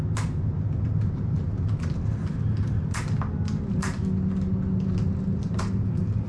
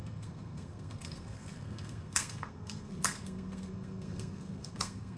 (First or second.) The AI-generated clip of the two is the second